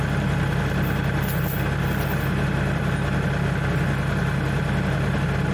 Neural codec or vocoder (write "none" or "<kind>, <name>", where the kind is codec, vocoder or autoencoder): none